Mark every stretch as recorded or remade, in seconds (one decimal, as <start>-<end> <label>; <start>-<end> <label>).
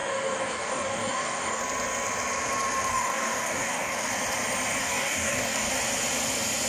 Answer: 0.0-1.6 remade; 1.6-2.9 recorded; 2.9-4.1 remade; 4.1-4.8 recorded; 4.8-5.7 remade; 5.7-6.7 recorded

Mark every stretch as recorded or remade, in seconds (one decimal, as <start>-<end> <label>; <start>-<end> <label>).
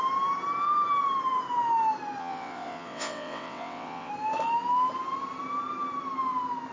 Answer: 0.0-2.2 recorded; 2.2-4.1 remade; 4.1-6.7 recorded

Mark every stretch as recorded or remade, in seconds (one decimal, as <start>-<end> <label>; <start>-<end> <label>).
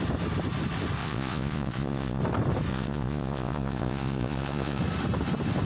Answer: 0.0-1.0 recorded; 1.0-2.2 remade; 2.2-2.7 recorded; 2.7-4.8 remade; 4.8-5.7 recorded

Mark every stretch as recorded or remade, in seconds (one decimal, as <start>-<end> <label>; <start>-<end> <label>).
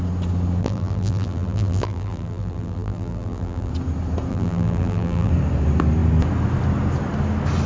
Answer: 0.0-0.6 recorded; 0.6-3.7 remade; 3.7-4.3 recorded; 4.3-5.3 remade; 5.3-7.7 recorded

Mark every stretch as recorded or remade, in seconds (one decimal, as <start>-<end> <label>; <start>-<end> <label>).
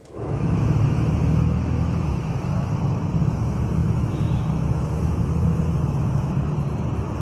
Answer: 0.0-2.7 remade; 2.7-3.8 recorded; 3.8-6.3 remade; 6.3-7.2 recorded